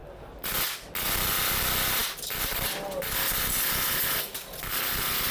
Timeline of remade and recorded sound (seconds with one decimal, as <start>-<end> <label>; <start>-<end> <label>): 0.0-5.3 recorded